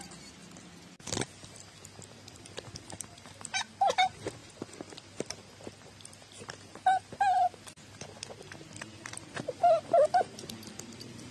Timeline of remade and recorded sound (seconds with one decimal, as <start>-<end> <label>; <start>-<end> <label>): 0.0-0.4 remade; 0.4-2.8 recorded; 2.8-4.4 remade; 4.4-8.8 recorded; 8.8-11.3 remade